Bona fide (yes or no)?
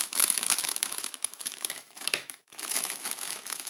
no